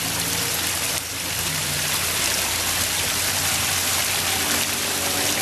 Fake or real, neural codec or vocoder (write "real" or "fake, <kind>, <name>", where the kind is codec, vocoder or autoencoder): real